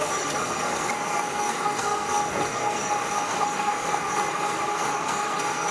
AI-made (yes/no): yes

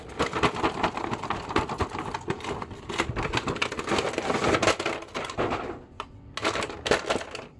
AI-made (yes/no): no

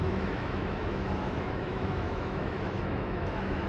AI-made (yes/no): yes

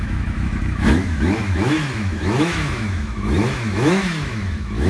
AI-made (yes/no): yes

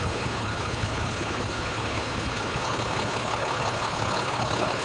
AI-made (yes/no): yes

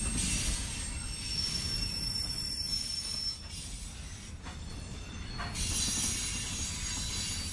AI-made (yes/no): no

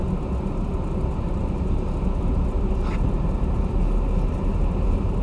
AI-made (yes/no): no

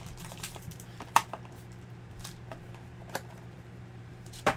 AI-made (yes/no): yes